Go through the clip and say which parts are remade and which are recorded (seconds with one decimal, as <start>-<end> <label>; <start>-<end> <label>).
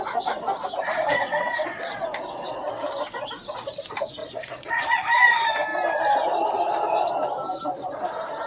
0.0-4.2 recorded; 4.2-4.8 remade; 4.8-8.5 recorded